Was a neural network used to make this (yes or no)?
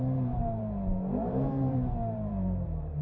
yes